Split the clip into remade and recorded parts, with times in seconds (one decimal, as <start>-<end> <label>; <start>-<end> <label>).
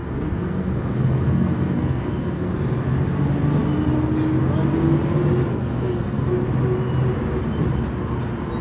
0.0-2.5 remade; 2.5-5.5 recorded; 5.5-6.3 remade; 6.3-8.6 recorded